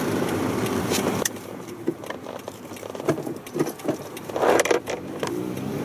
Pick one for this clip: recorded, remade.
remade